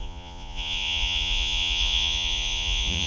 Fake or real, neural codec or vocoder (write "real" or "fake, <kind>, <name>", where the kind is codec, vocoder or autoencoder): fake, vocoder, Vocos